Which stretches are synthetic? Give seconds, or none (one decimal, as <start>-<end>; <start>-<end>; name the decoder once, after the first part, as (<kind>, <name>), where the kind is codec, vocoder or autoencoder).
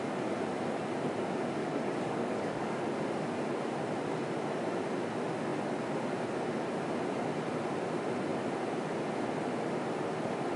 1.6-2.8 (codec, DAC)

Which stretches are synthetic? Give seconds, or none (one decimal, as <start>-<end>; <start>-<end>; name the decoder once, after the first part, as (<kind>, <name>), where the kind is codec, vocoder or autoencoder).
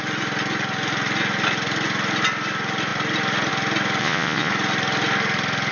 4.0-4.5 (vocoder, Vocos)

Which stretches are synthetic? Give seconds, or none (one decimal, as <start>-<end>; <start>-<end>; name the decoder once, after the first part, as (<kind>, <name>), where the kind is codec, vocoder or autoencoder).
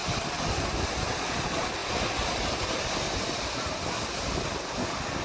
none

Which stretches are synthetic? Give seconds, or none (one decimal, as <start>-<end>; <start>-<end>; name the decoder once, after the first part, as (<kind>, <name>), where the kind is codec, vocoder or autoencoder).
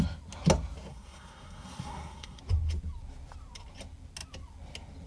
0.9-2.4 (codec, SNAC)